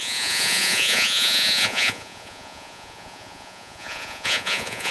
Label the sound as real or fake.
fake